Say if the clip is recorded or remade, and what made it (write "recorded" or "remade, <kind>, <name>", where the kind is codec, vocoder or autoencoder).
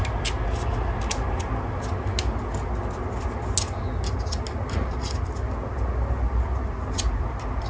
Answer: recorded